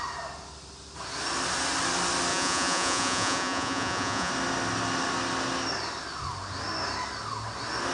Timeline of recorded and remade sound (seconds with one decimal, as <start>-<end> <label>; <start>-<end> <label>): 0.0-2.3 recorded; 2.3-4.3 remade; 4.3-7.9 recorded